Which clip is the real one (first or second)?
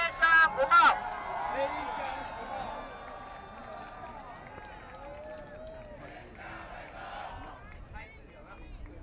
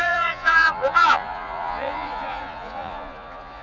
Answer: first